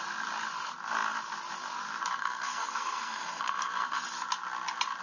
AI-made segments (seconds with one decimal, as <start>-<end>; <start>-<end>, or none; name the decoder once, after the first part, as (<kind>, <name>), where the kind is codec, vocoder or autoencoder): 2.2-4.0 (codec, SNAC)